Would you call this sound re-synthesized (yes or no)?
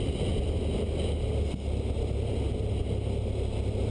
no